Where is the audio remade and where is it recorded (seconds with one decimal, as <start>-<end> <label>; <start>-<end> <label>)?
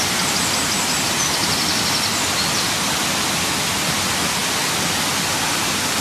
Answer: 0.0-6.0 recorded